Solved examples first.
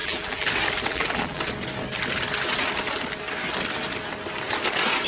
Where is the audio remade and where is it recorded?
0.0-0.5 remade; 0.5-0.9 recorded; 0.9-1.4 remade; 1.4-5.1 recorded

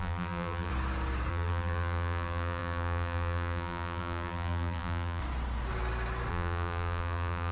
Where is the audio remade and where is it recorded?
0.0-0.7 remade; 0.7-1.3 recorded; 1.3-5.2 remade; 5.2-6.3 recorded; 6.3-7.5 remade

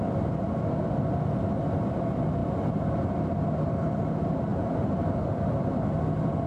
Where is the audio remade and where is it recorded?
0.0-4.5 recorded; 4.5-6.0 remade; 6.0-6.5 recorded